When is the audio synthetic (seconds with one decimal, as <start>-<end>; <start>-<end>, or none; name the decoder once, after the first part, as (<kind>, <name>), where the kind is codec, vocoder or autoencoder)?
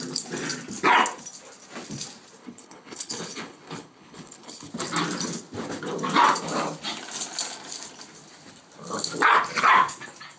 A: 2.4-4.7 (codec, HILCodec)